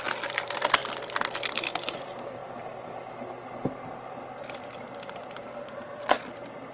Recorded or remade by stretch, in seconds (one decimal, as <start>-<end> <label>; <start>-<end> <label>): 0.0-0.8 remade; 0.8-2.0 recorded; 2.0-2.4 remade; 2.4-3.9 recorded; 3.9-6.7 remade